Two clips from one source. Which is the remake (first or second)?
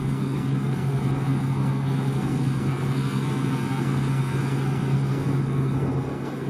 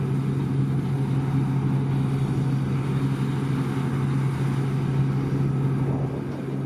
first